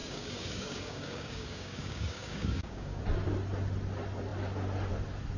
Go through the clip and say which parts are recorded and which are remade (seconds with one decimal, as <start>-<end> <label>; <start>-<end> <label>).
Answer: 0.0-3.0 remade; 3.0-5.4 recorded